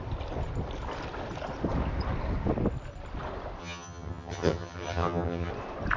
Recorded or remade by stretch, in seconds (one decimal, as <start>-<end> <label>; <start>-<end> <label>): 0.0-3.6 recorded; 3.6-5.5 remade; 5.5-6.0 recorded